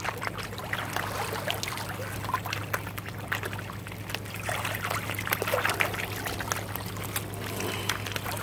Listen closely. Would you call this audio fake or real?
real